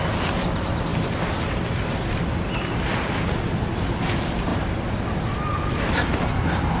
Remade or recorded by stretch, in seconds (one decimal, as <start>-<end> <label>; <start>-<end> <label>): 0.0-0.9 recorded; 0.9-2.3 remade; 2.3-4.5 recorded; 4.5-6.3 remade; 6.3-6.8 recorded